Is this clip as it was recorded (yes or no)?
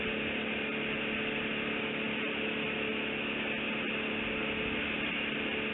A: yes